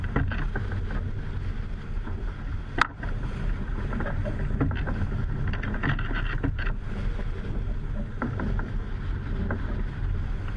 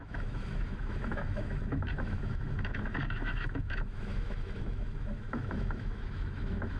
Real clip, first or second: first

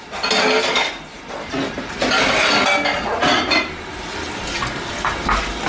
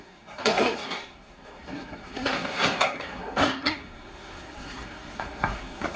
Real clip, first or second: first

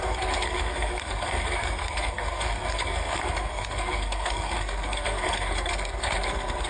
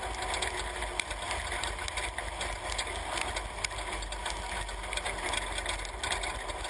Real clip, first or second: second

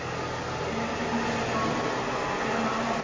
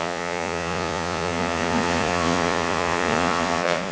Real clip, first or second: first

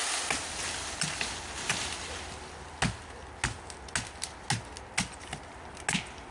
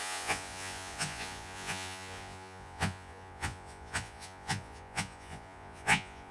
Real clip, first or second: first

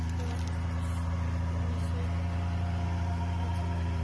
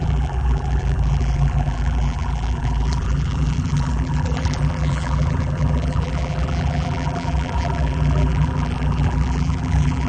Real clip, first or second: first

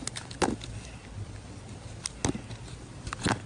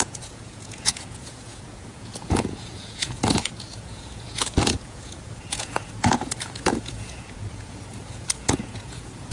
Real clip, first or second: first